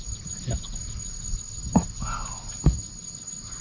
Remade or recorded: recorded